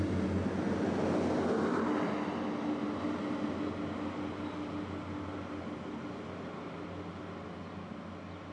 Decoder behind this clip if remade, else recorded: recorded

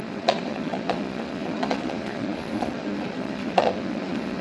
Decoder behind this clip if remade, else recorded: remade, vocoder, Vocos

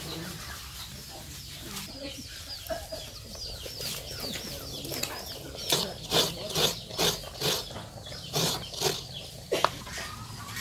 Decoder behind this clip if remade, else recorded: recorded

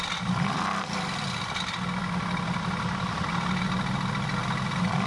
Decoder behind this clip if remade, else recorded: recorded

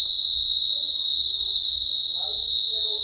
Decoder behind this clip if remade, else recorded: recorded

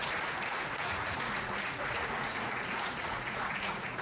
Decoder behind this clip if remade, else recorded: remade, vocoder, Vocos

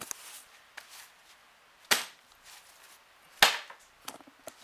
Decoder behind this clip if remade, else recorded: recorded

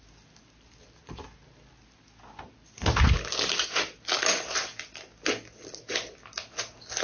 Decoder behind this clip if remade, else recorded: recorded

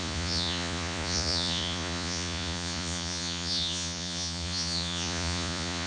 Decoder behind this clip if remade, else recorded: remade, vocoder, Vocos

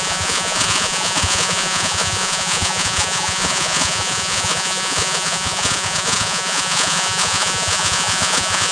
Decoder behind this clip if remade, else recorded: remade, vocoder, Vocos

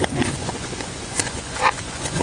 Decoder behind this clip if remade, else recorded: remade, vocoder, Vocos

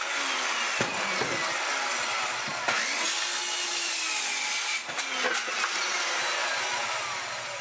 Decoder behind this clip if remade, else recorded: recorded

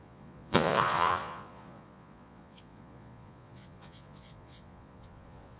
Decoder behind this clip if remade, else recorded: remade, vocoder, Vocos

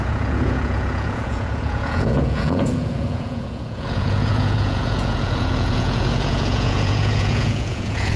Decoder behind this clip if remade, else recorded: remade, vocoder, Vocos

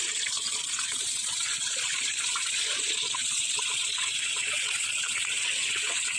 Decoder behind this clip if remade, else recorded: remade, vocoder, Vocos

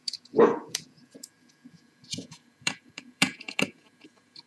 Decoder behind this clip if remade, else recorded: remade, vocoder, Vocos